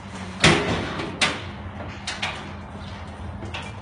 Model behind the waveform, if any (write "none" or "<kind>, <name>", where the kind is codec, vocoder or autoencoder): none